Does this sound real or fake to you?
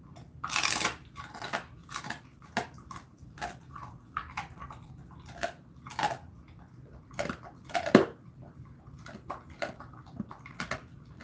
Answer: real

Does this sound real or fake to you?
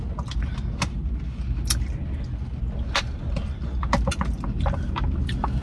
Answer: real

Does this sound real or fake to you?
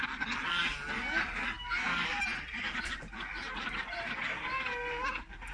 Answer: real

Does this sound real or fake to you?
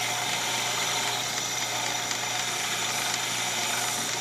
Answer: real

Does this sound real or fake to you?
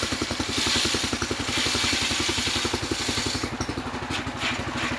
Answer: real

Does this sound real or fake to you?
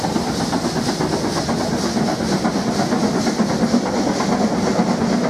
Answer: real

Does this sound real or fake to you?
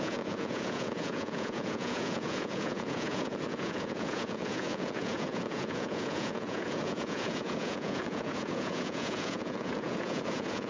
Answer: fake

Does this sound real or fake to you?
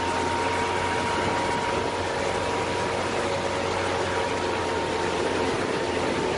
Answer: real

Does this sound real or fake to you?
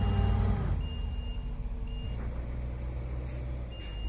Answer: real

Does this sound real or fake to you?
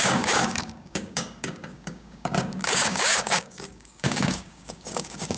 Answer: fake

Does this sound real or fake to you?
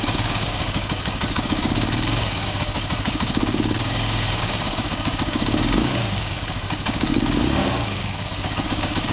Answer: fake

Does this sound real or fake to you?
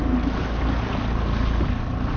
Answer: real